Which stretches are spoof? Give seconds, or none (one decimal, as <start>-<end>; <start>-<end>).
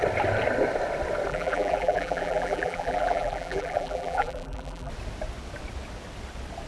1.3-4.9